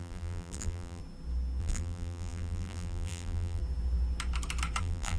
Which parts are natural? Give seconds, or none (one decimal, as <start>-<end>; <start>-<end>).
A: 1.0-1.6; 3.6-4.8